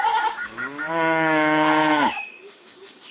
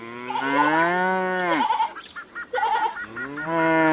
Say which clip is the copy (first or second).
first